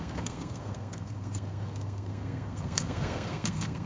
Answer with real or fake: fake